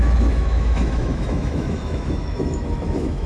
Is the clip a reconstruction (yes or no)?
yes